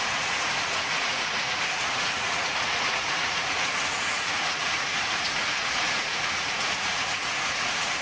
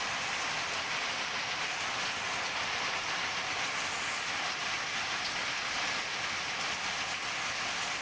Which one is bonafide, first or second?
second